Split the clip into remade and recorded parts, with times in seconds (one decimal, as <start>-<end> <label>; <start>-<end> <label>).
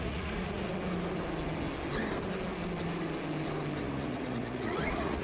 0.0-0.7 remade; 0.7-3.8 recorded; 3.8-5.2 remade